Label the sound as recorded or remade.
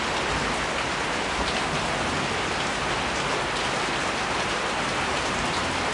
recorded